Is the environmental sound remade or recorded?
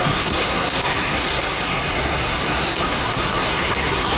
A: remade